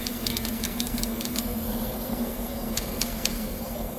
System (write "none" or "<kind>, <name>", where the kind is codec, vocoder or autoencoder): codec, SNAC